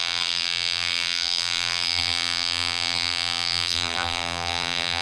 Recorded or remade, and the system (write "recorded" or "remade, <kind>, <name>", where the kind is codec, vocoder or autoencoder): remade, vocoder, BigVGAN v2